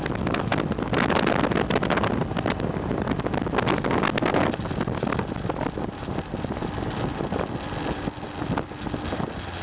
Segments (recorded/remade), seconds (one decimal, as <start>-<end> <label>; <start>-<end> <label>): 0.0-9.6 recorded